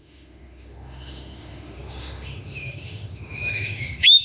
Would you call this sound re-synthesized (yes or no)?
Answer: yes